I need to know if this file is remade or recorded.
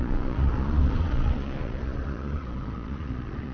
remade